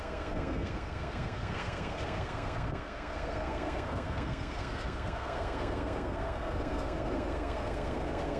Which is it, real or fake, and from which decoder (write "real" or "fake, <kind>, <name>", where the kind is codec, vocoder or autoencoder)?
fake, codec, SNAC